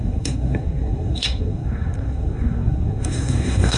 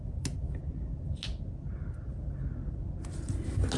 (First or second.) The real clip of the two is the second